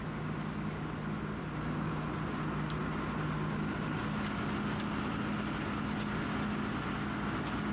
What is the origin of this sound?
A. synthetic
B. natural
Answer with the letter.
B